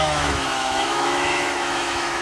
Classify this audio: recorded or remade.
remade